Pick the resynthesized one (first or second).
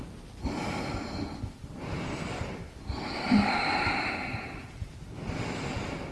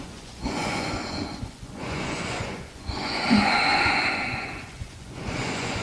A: second